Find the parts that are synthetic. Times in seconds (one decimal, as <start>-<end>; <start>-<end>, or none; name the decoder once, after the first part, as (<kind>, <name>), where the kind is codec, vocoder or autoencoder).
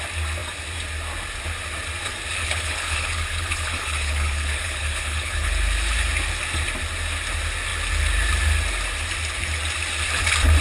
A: 2.4-5.5 (codec, HILCodec)